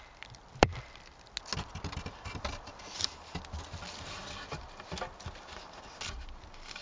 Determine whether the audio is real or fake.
real